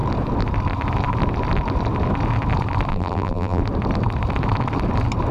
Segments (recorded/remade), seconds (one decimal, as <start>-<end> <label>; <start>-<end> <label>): 0.0-2.9 recorded; 2.9-3.6 remade; 3.6-5.3 recorded